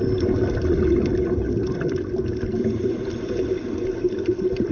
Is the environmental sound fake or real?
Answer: real